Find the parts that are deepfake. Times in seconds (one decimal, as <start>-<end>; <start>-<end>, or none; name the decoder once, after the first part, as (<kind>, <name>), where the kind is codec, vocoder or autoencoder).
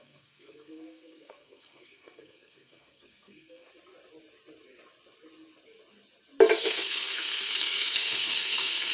0.0-3.7 (codec, SNAC); 6.5-8.9